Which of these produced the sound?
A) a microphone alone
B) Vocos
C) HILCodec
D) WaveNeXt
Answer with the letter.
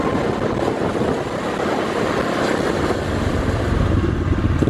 A